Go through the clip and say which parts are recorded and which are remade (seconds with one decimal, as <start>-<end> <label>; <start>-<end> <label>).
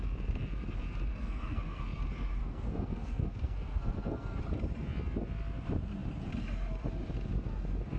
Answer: 0.0-1.1 recorded; 1.1-1.8 remade; 1.8-2.4 recorded; 2.4-4.4 remade; 4.4-8.0 recorded